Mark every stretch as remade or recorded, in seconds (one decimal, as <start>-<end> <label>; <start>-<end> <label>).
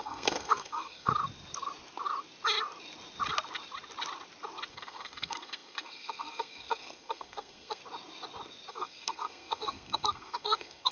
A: 0.0-1.1 remade; 1.1-4.7 recorded; 4.7-7.8 remade; 7.8-8.7 recorded; 8.7-10.9 remade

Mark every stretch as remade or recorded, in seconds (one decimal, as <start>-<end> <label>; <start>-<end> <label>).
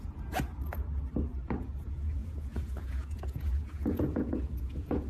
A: 0.0-0.5 remade; 0.5-1.6 recorded; 1.6-5.1 remade